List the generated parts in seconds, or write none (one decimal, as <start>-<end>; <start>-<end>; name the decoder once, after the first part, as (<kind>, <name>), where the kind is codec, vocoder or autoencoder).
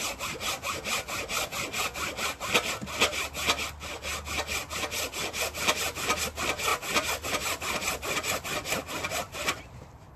none